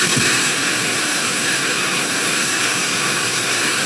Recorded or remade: remade